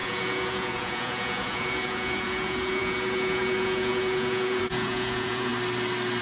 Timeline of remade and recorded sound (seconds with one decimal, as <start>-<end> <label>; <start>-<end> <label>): 0.0-5.5 remade; 5.5-6.2 recorded